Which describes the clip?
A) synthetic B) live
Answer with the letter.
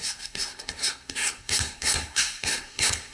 A